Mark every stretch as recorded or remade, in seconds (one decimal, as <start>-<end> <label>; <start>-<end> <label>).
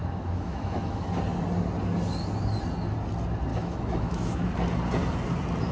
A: 0.0-1.1 remade; 1.1-3.5 recorded; 3.5-4.5 remade; 4.5-5.7 recorded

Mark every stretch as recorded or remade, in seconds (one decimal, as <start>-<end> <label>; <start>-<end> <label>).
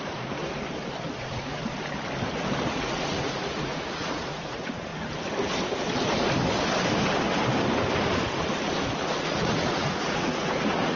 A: 0.0-0.4 remade; 0.4-1.1 recorded; 1.1-1.7 remade; 1.7-2.6 recorded; 2.6-4.9 remade; 4.9-9.2 recorded; 9.2-11.0 remade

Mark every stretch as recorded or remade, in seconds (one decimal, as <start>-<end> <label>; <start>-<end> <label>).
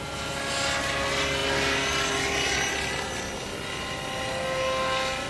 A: 0.0-5.3 recorded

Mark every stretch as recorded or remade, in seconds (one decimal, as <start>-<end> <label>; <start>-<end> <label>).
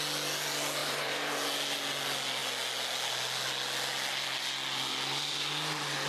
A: 0.0-0.8 recorded; 0.8-1.3 remade; 1.3-6.1 recorded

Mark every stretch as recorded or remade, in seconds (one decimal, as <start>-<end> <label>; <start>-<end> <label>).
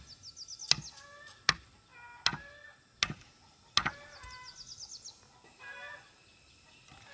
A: 0.0-7.1 recorded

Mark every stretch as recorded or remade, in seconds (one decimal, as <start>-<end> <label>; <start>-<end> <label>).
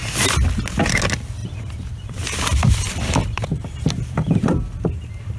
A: 0.0-1.4 recorded; 1.4-4.6 remade; 4.6-5.4 recorded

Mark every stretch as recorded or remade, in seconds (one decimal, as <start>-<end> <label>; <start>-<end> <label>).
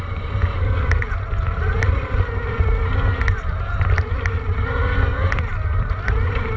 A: 0.0-6.6 recorded